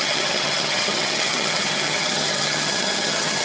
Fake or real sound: fake